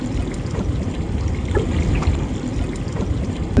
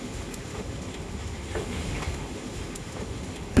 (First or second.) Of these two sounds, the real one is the first